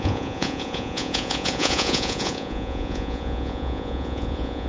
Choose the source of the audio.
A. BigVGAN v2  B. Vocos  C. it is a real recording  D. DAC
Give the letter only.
B